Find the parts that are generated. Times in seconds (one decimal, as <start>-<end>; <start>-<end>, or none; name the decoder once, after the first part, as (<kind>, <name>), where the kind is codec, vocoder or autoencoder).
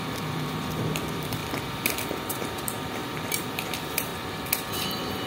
0.0-1.4 (vocoder, BigVGAN v2); 2.1-4.1; 4.7-5.3